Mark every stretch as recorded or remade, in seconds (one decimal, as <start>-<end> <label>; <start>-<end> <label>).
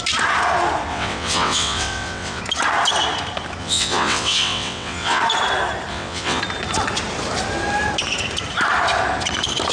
0.0-0.9 recorded; 0.9-2.4 remade; 2.4-3.6 recorded; 3.6-5.2 remade; 5.2-5.9 recorded; 5.9-6.4 remade; 6.4-9.7 recorded